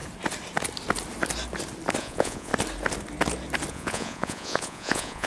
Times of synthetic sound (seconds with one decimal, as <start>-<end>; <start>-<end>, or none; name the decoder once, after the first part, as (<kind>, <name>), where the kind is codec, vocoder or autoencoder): 2.0-2.5 (vocoder, Vocos); 3.7-5.3